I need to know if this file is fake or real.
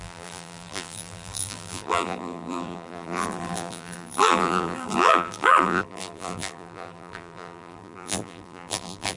fake